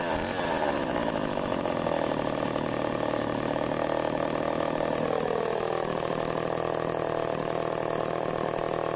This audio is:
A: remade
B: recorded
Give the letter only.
B